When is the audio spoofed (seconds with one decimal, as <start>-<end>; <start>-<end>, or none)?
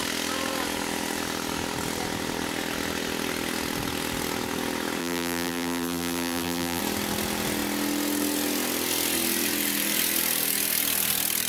5.0-6.8